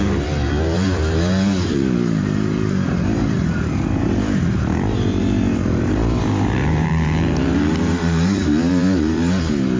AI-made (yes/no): yes